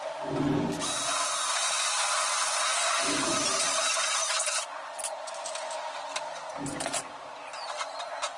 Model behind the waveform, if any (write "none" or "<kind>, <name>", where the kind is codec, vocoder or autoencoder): none